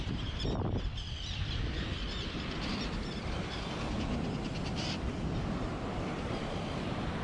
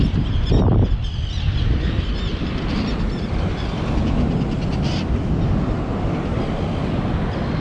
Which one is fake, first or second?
first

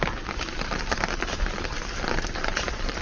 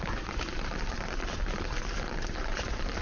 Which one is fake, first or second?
second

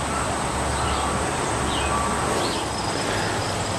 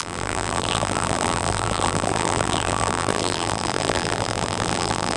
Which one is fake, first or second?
second